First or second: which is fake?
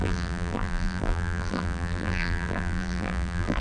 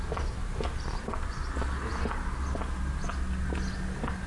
first